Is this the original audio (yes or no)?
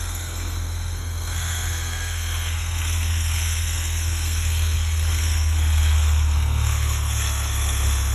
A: no